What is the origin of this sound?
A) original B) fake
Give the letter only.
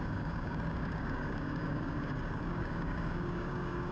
B